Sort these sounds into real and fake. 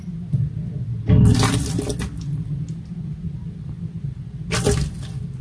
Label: real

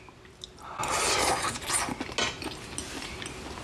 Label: real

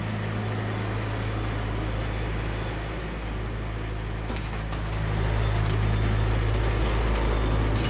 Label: real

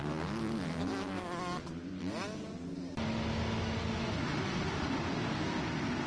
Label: real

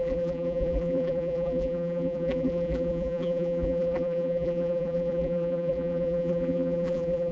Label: fake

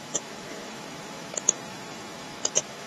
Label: fake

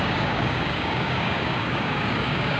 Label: fake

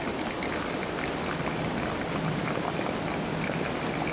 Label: real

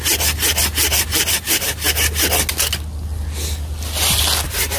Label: real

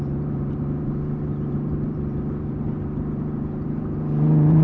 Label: fake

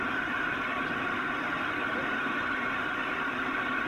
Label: fake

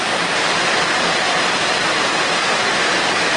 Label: real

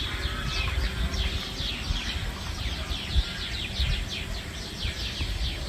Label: real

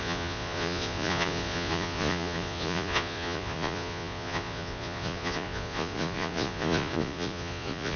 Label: fake